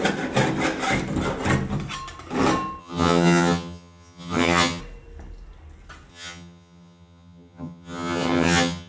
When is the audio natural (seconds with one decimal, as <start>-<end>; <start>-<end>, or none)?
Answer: 0.0-2.8; 4.8-6.1